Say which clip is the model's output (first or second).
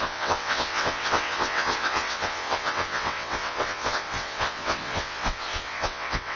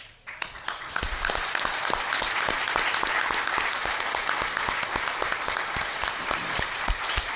first